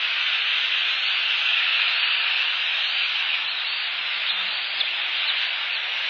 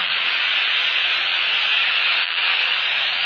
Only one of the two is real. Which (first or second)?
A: first